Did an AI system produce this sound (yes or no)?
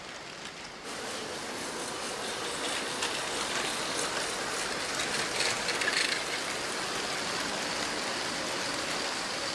no